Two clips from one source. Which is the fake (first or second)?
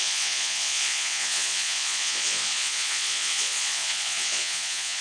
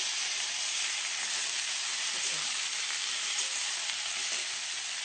first